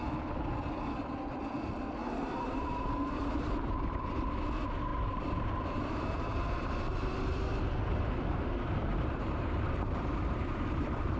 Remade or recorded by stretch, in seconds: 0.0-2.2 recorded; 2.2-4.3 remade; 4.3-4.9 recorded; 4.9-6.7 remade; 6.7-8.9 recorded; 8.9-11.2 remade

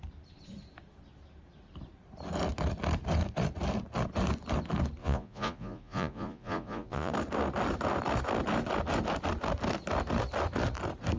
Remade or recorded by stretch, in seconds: 0.0-5.0 recorded; 5.0-7.1 remade; 7.1-11.2 recorded